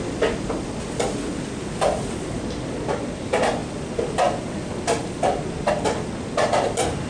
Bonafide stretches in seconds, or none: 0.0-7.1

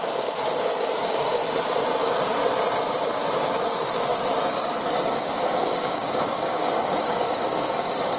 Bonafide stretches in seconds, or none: 1.4-2.0; 2.4-3.4; 4.3-5.1

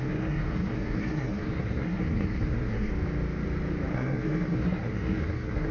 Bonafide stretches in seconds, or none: 2.9-3.9

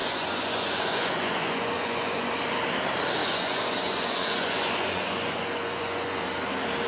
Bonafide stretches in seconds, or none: 2.3-3.2; 6.2-6.9

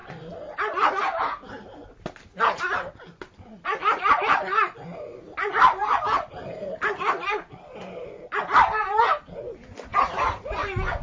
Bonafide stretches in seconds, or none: 0.0-11.0

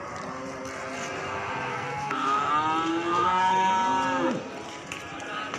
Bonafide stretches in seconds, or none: 0.0-1.7; 2.5-2.9; 3.7-5.6